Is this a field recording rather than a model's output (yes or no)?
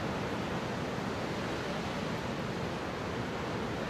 yes